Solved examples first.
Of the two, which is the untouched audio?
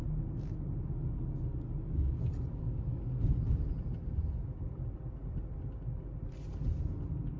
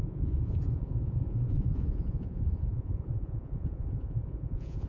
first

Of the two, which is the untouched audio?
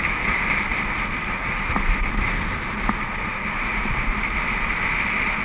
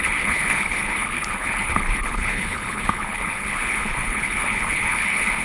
first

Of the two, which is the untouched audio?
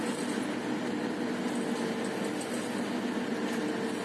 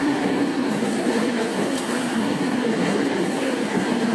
first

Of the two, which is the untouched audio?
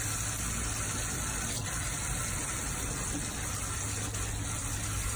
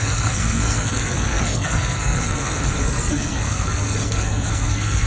first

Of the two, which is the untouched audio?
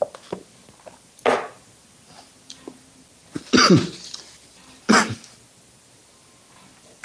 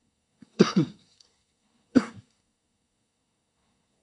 first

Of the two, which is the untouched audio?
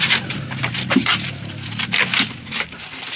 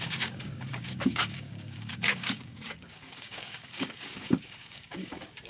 first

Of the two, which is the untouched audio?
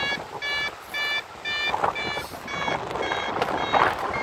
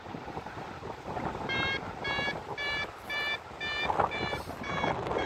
first